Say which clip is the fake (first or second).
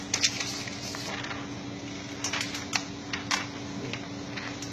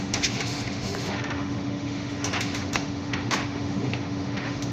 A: second